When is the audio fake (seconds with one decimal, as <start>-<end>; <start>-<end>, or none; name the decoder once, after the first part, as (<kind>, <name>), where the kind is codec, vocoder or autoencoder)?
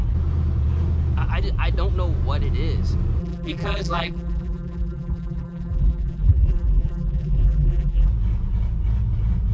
3.2-8.1 (vocoder, BigVGAN v2)